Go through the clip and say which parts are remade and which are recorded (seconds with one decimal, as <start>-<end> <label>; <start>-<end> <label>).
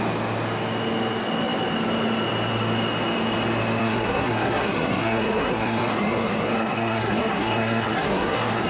0.0-3.8 recorded; 3.8-8.7 remade